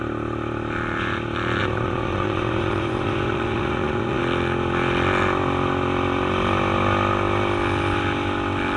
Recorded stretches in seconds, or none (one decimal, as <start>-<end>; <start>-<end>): 0.0-1.6; 4.2-8.8